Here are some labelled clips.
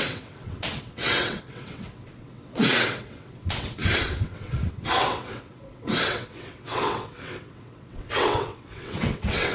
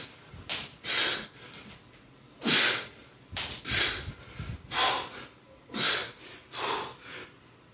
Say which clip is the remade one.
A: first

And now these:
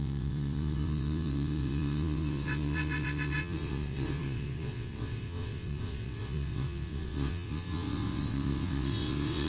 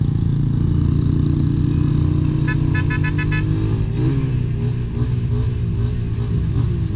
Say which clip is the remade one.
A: first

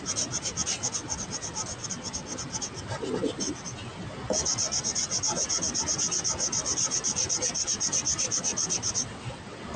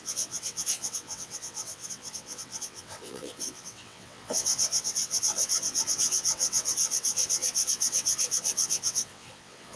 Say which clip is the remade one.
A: second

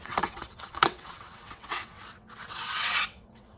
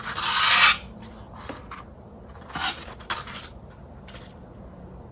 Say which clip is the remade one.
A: first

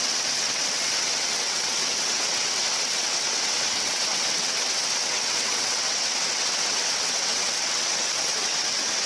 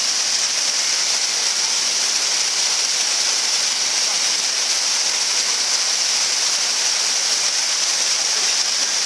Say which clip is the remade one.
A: first